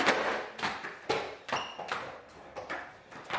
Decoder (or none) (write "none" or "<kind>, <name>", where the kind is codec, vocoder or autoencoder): none